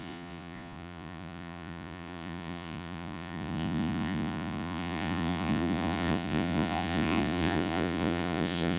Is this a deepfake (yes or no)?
yes